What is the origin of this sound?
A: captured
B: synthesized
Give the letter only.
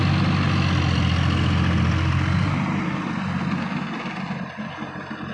A